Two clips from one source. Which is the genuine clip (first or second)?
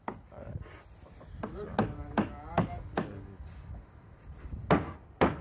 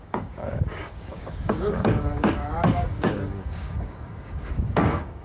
first